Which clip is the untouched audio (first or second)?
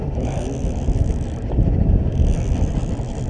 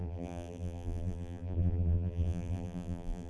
first